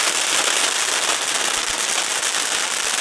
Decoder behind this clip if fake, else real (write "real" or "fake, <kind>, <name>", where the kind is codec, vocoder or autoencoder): real